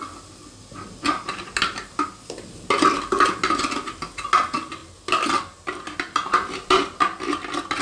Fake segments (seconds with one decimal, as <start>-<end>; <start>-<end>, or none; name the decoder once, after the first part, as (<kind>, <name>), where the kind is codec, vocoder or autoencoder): none